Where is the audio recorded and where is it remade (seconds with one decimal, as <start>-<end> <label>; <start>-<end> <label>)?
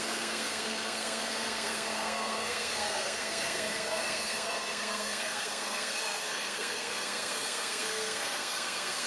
0.0-9.1 remade